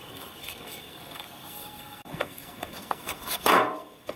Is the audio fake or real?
fake